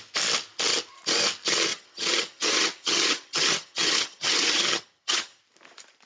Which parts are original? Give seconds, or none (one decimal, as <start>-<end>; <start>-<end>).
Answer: 0.0-1.7; 5.4-6.1